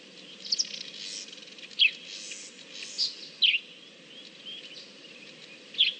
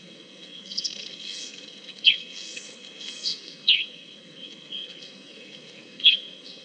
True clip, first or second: first